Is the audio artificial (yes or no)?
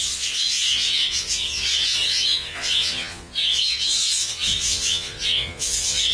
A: yes